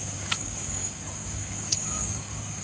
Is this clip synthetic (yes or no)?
yes